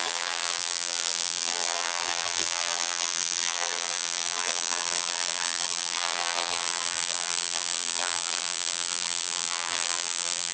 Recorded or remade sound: remade